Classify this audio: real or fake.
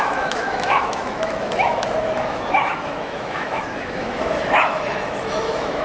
fake